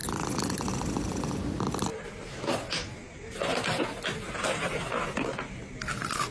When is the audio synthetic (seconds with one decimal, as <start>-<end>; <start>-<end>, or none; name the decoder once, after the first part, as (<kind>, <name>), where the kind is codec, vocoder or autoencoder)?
1.9-5.7 (vocoder, BigVGAN v2)